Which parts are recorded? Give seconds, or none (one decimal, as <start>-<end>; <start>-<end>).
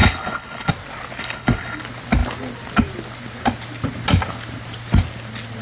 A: 0.7-1.2; 1.8-5.6